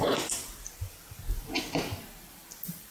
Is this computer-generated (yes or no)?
yes